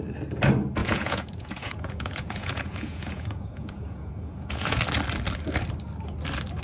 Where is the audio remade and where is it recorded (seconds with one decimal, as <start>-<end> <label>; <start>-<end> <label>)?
0.0-0.8 recorded; 0.8-4.8 remade; 4.8-6.6 recorded